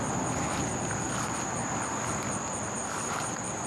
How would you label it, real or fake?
real